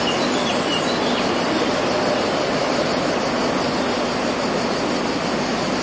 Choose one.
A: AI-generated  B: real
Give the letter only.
B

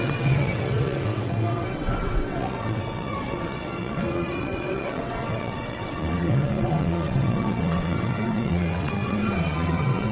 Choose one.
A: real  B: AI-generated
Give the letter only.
B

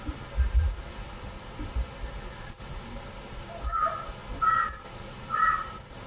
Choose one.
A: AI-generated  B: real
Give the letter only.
B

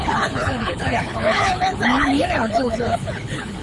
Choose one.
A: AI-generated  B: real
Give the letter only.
A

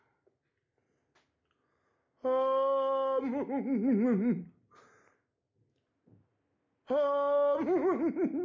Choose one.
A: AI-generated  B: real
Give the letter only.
B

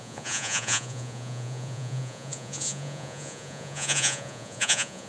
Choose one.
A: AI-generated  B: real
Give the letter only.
A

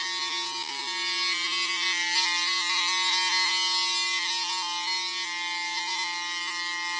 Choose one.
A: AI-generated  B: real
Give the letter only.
B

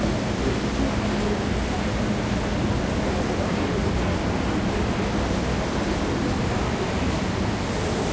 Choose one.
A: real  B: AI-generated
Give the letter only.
A